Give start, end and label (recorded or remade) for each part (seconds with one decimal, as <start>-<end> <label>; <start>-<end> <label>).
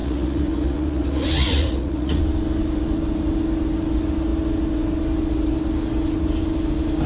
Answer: 0.0-2.2 remade; 2.2-7.1 recorded